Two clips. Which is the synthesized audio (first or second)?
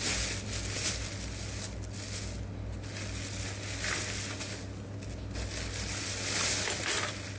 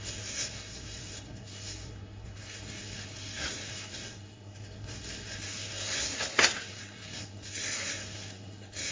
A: second